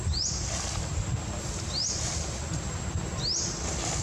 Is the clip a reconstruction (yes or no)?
no